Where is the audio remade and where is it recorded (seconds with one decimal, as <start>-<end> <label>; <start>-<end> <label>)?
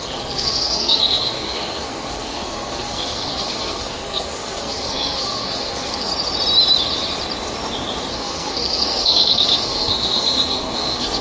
0.0-6.1 remade; 6.1-8.1 recorded; 8.1-11.2 remade